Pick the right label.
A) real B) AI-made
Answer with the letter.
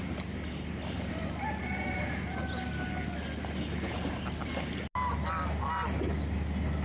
A